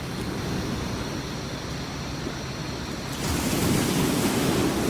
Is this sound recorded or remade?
recorded